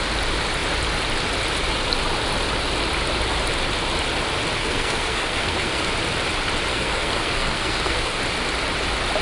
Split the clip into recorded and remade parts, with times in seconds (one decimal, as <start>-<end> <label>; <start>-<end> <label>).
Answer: 0.0-4.6 recorded; 4.6-5.9 remade; 5.9-6.7 recorded; 6.7-8.2 remade; 8.2-9.2 recorded